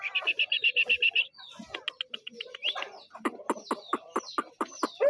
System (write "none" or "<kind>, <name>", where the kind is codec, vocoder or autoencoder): none